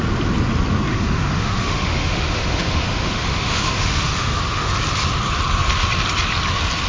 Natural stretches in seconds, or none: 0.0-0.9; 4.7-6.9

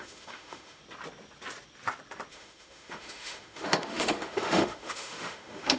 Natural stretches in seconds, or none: 0.8-2.3

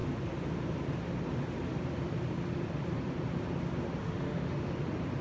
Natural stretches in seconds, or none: 0.0-4.0; 4.7-5.2

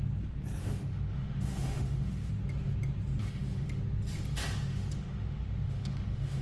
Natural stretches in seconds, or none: 0.0-0.6; 2.3-3.2; 3.8-4.7